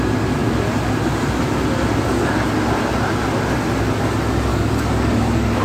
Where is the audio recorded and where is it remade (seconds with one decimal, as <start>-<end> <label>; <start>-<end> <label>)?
0.0-4.5 recorded; 4.5-5.6 remade

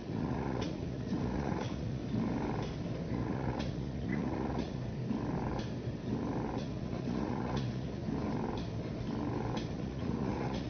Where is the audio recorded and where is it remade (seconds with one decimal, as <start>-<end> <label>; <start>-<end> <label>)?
0.0-2.0 remade; 2.0-3.1 recorded; 3.1-4.8 remade; 4.8-6.6 recorded; 6.6-8.0 remade; 8.0-9.7 recorded; 9.7-10.7 remade

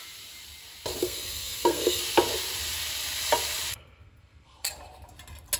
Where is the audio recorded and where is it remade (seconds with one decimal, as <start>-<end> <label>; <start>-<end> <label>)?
0.0-1.0 recorded; 1.0-2.0 remade; 2.0-3.7 recorded; 3.7-4.7 remade; 4.7-5.6 recorded

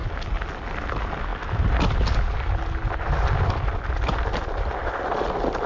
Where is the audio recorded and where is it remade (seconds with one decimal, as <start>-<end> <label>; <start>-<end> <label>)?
0.0-5.7 recorded

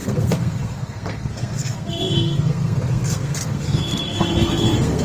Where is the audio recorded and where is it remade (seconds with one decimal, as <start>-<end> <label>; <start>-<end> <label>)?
0.0-5.0 remade

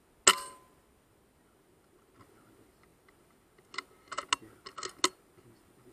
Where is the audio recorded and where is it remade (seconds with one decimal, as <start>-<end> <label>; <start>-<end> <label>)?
0.0-5.9 recorded

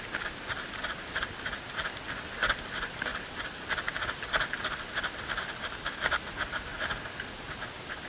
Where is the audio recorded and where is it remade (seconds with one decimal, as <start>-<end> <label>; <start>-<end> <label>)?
0.0-8.1 recorded

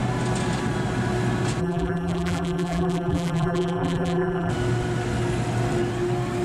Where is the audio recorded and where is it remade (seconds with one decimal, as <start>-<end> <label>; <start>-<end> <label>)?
0.0-1.6 recorded; 1.6-4.5 remade; 4.5-6.4 recorded